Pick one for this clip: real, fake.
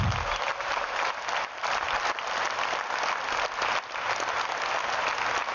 real